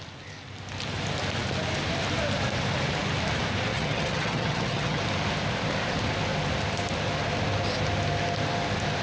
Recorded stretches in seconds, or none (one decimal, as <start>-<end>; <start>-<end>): 0.0-3.7; 5.0-9.0